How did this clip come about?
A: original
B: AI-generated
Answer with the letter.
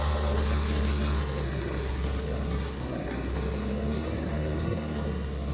B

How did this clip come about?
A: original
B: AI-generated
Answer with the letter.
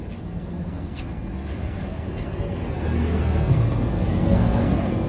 B